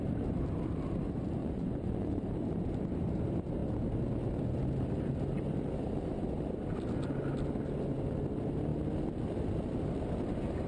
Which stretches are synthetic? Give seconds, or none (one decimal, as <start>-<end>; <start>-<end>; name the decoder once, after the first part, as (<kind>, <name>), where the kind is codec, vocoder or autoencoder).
1.4-2.2 (vocoder, Vocos)